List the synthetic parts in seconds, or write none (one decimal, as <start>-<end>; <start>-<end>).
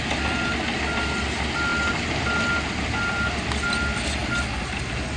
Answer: none